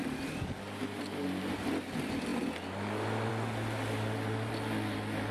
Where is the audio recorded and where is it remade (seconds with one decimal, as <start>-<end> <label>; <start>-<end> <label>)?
0.0-5.3 recorded